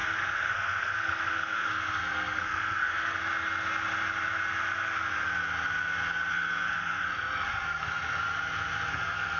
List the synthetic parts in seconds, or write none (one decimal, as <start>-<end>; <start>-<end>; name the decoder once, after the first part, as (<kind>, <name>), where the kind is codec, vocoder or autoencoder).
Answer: 0.0-3.2 (codec, SNAC); 6.3-8.2; 8.9-9.4